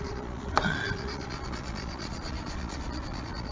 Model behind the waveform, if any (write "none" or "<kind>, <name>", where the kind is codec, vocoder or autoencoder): vocoder, Vocos